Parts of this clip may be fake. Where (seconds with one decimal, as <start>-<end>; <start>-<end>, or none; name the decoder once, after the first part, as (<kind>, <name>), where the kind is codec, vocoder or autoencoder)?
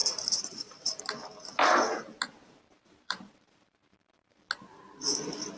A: 0.0-1.0 (vocoder, BigVGAN v2); 2.7-4.4